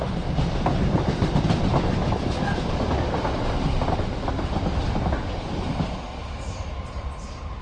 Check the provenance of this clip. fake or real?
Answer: real